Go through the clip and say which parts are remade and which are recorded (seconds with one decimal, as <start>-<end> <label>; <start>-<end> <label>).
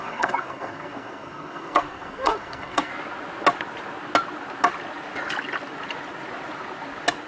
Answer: 0.0-2.9 remade; 2.9-7.3 recorded